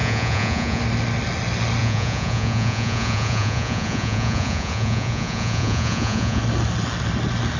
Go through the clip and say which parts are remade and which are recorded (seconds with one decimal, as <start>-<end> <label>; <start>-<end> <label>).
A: 0.0-0.8 remade; 0.8-1.8 recorded; 1.8-6.4 remade; 6.4-7.6 recorded

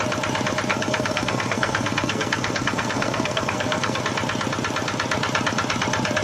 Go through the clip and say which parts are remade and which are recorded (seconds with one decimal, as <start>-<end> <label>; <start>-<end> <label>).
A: 0.0-0.7 recorded; 0.7-4.0 remade; 4.0-6.2 recorded

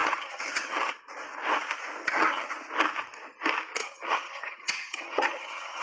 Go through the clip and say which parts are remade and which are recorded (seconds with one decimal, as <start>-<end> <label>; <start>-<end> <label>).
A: 0.0-0.9 remade; 0.9-2.0 recorded; 2.0-2.5 remade; 2.5-3.8 recorded; 3.8-5.8 remade